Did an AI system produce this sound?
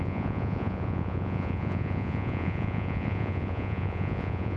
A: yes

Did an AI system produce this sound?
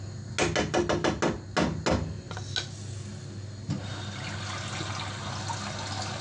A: no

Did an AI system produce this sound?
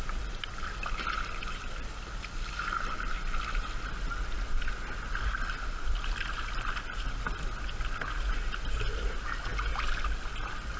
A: no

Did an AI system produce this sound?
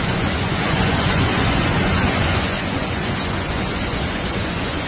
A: yes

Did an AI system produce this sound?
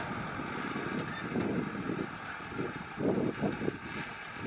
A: no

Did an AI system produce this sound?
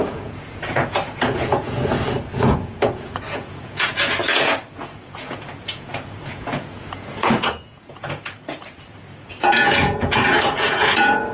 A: yes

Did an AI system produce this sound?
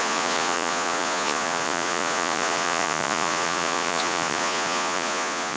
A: yes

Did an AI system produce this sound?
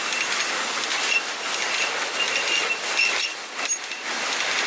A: no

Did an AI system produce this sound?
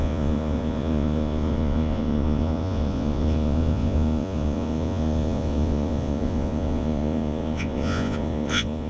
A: yes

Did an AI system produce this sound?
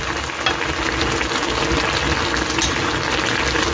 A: no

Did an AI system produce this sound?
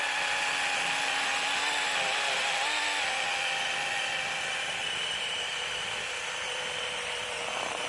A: no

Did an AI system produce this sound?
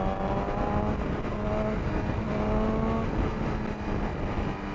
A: no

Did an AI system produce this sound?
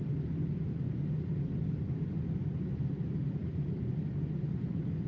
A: no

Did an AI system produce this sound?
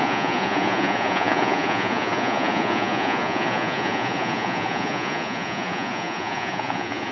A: yes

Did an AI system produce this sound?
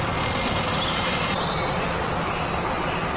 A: no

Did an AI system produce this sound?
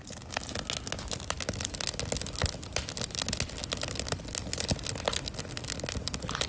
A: no